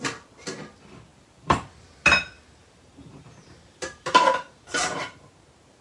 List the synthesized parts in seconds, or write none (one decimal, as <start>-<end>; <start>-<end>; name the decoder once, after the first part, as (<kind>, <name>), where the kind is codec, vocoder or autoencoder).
1.1-1.7 (vocoder, BigVGAN v2); 2.6-5.0